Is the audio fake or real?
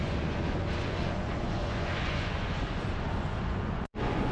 fake